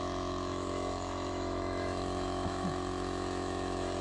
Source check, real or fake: fake